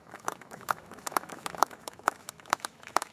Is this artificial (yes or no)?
yes